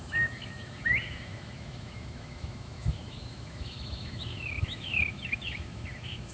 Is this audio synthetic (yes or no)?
yes